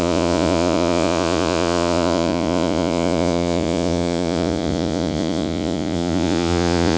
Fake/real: fake